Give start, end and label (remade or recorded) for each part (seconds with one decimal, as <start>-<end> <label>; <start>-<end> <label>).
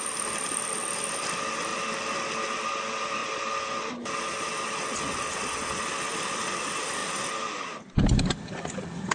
0.0-9.1 recorded